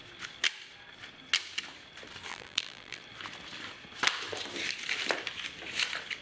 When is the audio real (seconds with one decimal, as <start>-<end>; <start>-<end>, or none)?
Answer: 0.0-2.3; 3.0-6.2